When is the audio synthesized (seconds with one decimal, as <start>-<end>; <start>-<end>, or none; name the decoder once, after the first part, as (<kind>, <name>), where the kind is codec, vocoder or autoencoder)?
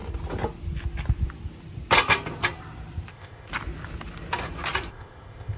3.1-3.5 (codec, ZipCodec); 4.9-5.6